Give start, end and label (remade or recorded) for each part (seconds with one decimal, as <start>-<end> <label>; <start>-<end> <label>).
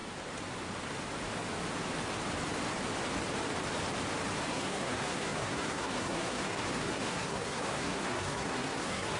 0.0-4.5 recorded; 4.5-9.2 remade